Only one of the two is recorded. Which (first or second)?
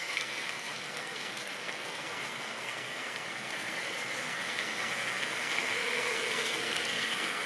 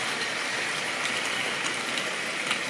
second